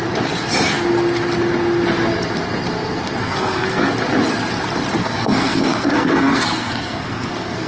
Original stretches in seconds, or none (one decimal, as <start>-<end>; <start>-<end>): 0.0-3.2; 3.9-5.0